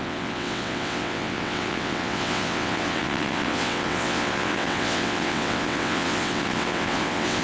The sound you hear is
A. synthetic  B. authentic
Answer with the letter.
A